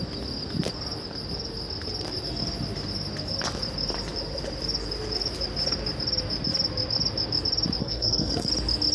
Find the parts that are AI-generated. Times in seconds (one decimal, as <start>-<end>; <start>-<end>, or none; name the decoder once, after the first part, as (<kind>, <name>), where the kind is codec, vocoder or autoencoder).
7.8-8.5 (codec, SNAC)